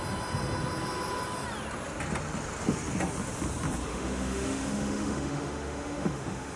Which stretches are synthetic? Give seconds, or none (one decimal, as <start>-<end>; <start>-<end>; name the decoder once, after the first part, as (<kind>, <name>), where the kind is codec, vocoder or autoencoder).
3.9-6.6 (autoencoder, DAC-VAE)